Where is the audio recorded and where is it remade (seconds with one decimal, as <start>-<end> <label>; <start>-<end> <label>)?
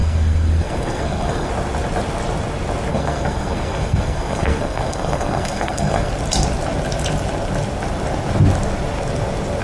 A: 0.0-1.5 remade; 1.5-2.9 recorded; 2.9-6.1 remade; 6.1-9.6 recorded